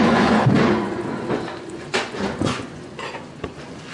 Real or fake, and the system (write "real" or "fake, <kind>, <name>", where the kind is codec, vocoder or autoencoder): fake, vocoder, Vocos